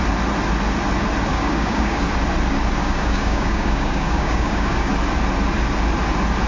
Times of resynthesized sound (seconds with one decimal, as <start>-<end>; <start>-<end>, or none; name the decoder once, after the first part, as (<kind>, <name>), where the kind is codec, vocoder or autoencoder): 1.3-2.0 (codec, DAC); 2.8-4.9

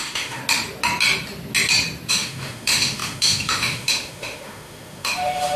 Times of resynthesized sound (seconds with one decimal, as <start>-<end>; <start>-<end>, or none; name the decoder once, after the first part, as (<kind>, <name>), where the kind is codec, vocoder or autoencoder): 0.0-0.4 (autoencoder, DAC-VAE); 2.1-5.6

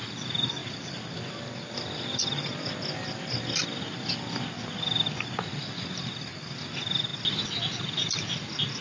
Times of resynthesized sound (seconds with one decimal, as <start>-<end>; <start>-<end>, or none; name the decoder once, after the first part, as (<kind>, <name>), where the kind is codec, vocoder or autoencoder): none

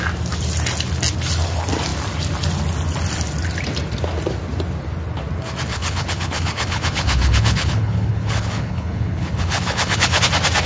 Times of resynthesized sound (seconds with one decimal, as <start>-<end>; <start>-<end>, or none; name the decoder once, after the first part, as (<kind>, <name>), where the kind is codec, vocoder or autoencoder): 5.7-10.2 (codec, HILCodec)

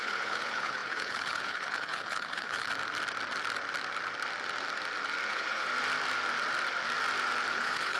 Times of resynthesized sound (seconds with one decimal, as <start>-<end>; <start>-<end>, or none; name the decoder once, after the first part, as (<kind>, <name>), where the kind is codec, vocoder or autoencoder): 0.0-2.7 (codec, HILCodec); 5.3-5.7; 7.5-8.0